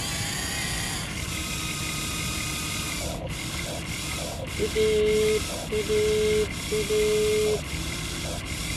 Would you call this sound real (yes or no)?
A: yes